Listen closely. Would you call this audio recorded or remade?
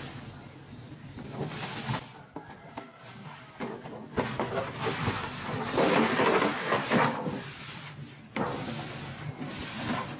recorded